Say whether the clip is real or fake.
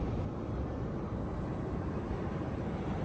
fake